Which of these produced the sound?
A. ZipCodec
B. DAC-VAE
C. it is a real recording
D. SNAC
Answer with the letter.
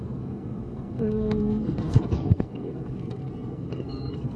D